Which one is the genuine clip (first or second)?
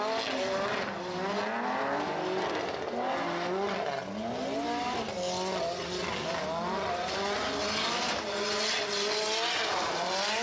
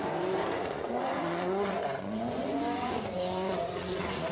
first